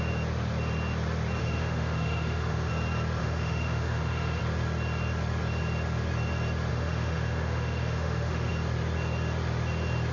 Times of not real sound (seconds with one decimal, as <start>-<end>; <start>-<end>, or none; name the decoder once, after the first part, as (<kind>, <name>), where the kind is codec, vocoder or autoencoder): 1.4-2.7 (autoencoder, DAC-VAE); 3.2-4.4; 6.7-8.5